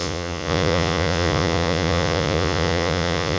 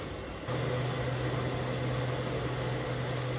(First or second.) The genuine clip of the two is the second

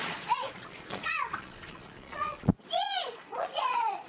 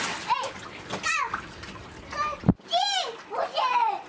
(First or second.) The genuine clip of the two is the second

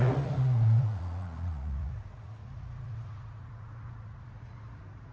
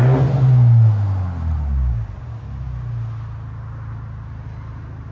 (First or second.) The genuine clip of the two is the second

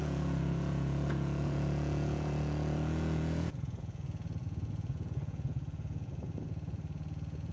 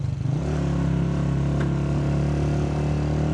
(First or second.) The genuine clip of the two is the second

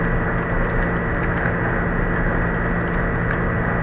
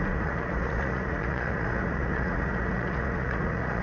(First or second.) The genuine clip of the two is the first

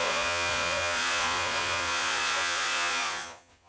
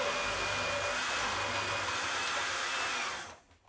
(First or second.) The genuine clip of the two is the second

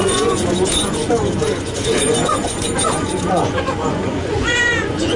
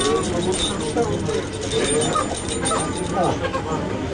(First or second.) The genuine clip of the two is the second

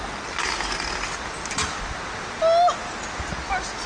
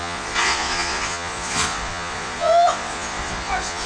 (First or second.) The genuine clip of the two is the first